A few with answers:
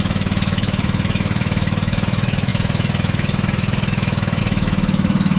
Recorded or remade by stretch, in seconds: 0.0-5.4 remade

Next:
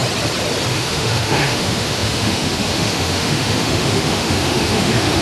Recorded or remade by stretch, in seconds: 0.0-0.7 recorded; 0.7-5.2 remade

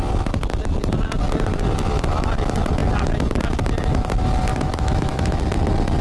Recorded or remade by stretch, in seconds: 0.0-4.5 recorded; 4.5-5.4 remade; 5.4-6.0 recorded

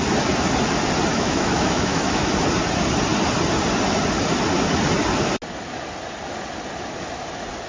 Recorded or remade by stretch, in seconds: 0.0-1.1 recorded; 1.1-2.3 remade; 2.3-7.7 recorded